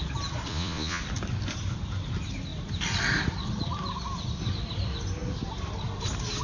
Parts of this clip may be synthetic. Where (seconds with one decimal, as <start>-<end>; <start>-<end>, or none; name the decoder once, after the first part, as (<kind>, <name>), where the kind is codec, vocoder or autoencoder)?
0.5-1.0 (vocoder, Vocos)